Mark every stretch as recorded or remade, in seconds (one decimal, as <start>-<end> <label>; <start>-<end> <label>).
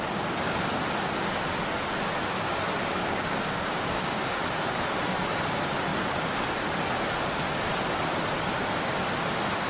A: 0.0-3.0 recorded; 3.0-4.4 remade; 4.4-9.7 recorded